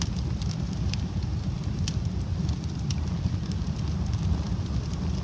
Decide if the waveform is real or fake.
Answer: real